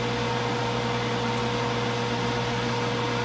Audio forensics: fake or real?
real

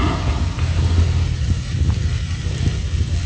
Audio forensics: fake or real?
real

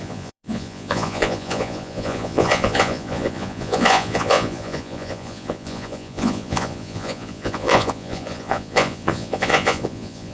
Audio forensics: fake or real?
fake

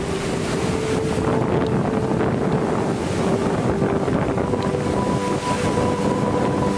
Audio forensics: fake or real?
real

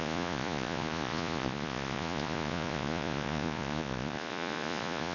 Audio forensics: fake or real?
fake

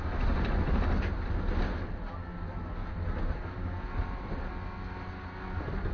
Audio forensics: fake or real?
real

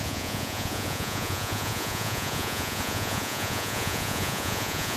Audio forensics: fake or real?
fake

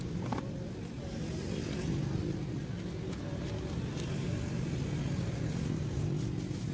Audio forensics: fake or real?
real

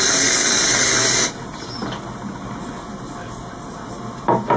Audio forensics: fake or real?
real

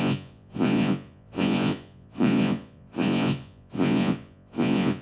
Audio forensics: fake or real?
fake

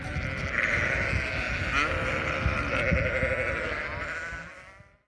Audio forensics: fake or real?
real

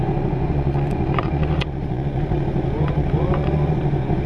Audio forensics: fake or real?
fake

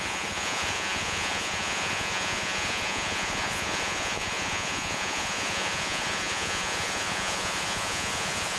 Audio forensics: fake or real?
fake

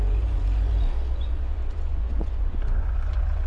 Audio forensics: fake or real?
fake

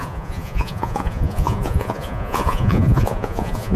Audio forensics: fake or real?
fake